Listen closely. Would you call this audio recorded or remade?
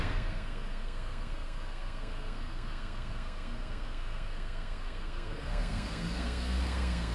remade